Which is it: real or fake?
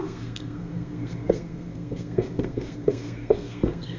fake